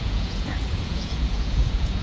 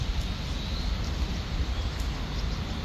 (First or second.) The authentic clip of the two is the second